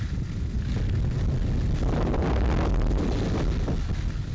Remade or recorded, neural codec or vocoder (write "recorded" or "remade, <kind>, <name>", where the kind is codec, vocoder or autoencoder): recorded